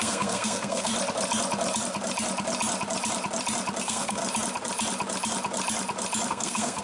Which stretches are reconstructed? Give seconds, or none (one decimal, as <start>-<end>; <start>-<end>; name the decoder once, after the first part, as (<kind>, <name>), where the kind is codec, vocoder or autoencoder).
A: 0.0-0.9 (codec, SNAC); 3.8-4.2; 6.3-6.8

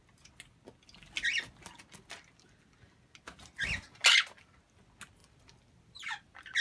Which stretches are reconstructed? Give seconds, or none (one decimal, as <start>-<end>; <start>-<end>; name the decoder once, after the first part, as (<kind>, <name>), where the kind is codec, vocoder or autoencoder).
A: none